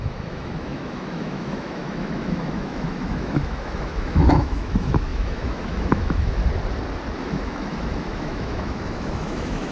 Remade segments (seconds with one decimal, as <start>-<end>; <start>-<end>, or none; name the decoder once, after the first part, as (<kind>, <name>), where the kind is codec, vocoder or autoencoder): 0.0-6.4 (autoencoder, DAC-VAE); 7.2-9.7